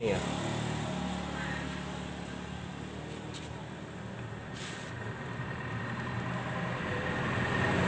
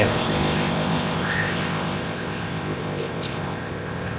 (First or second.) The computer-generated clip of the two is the second